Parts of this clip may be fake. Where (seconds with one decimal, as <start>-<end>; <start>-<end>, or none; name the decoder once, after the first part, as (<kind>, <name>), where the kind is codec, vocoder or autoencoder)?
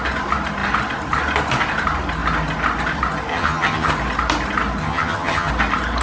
3.3-3.9 (vocoder, HiFi-GAN); 4.8-5.5